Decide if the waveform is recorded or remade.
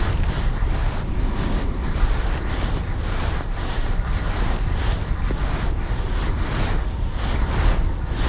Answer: recorded